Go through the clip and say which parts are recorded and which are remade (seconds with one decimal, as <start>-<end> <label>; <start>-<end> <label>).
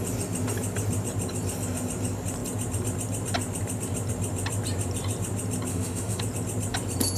0.0-5.7 recorded; 5.7-6.2 remade; 6.2-7.2 recorded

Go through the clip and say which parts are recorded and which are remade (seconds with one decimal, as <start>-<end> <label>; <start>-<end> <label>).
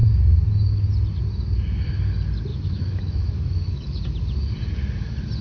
0.0-2.5 recorded; 2.5-4.0 remade; 4.0-5.4 recorded